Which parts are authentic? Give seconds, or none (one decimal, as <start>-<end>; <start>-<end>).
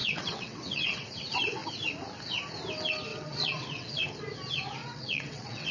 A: 1.1-3.1; 4.0-4.8